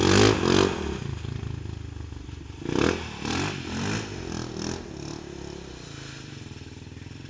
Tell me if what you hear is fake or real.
real